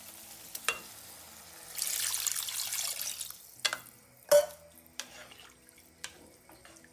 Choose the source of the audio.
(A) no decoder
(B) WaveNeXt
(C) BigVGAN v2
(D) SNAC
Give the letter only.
A